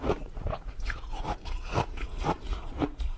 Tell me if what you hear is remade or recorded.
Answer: remade